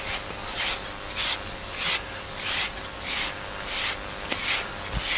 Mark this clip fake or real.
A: real